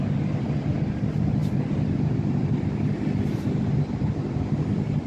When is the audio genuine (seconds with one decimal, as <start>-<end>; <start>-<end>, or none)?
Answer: none